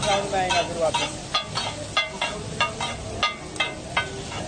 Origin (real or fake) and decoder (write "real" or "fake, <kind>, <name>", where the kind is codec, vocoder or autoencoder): real